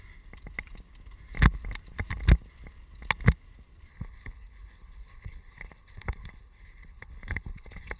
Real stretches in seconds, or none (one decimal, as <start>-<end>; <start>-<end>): 0.0-3.9